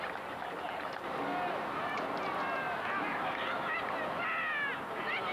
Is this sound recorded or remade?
recorded